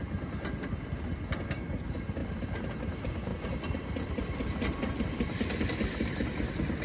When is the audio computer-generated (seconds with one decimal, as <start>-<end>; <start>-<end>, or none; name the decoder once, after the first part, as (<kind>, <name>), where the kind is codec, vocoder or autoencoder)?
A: none